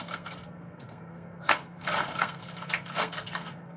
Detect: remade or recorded remade